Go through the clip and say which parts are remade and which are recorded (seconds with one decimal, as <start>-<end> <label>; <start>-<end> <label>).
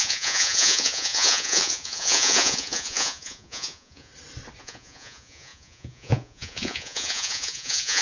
0.0-4.1 remade; 4.1-4.6 recorded; 4.6-8.0 remade